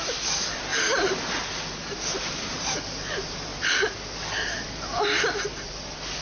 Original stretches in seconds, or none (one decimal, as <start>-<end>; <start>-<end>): 0.0-6.2

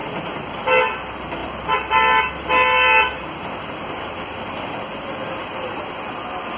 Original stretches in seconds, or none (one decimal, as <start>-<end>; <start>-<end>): 0.0-6.6

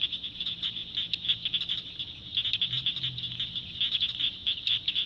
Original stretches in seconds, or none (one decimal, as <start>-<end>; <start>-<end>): 0.8-3.9

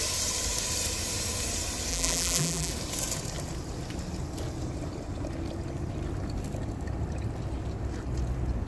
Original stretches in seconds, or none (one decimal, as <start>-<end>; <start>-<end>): 0.0-1.9; 2.7-8.7

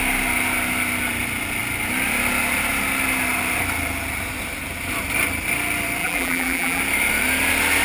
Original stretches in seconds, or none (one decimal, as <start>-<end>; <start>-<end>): 0.0-6.0; 6.8-7.8